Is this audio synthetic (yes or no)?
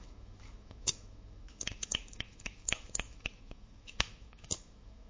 yes